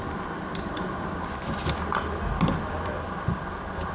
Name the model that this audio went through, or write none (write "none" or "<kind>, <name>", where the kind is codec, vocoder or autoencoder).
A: none